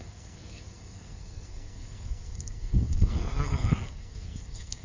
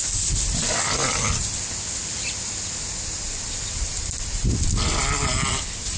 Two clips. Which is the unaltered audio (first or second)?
second